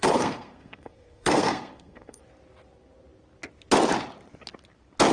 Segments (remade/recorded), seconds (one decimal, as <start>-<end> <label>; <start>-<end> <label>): 0.0-2.2 remade; 2.2-5.1 recorded